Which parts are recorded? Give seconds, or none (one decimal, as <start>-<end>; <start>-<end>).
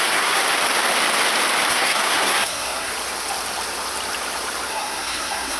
0.4-1.7; 2.9-4.7